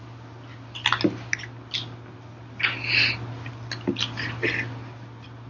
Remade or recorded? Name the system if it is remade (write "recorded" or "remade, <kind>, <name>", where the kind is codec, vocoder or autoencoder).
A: recorded